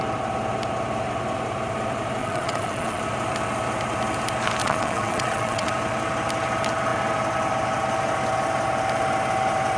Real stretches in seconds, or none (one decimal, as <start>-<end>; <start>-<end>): 0.0-2.2; 3.0-4.6; 5.7-9.8